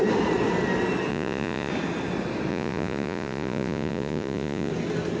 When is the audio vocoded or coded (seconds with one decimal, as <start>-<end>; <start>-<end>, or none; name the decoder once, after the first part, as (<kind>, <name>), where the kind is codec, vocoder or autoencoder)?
1.1-1.7 (vocoder, Vocos); 2.5-4.7